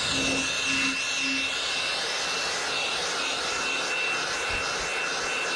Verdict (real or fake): real